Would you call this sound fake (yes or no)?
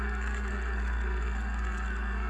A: yes